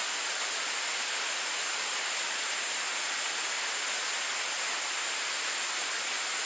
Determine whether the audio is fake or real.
real